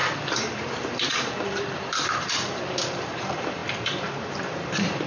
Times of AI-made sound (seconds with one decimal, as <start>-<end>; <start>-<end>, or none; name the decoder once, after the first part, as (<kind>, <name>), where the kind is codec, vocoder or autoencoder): 0.0-3.6 (vocoder, BigVGAN v2); 4.2-5.1